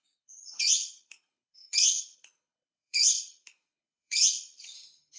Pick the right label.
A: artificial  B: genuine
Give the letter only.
A